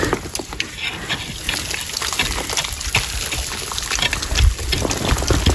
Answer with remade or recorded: recorded